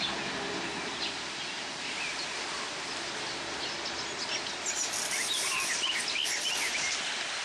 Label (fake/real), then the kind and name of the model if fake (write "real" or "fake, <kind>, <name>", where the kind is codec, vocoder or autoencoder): real